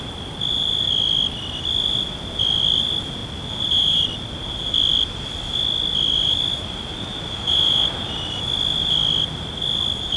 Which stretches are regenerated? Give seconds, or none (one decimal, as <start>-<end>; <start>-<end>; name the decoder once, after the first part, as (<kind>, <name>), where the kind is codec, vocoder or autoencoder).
none